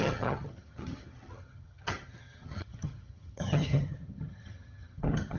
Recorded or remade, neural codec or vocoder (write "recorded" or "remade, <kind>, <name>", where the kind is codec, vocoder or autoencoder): remade, vocoder, HiFi-GAN